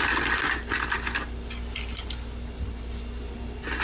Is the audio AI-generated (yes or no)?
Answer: no